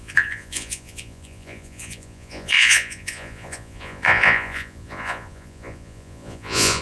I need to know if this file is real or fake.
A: fake